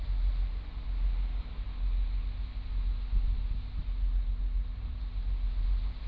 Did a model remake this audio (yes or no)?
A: no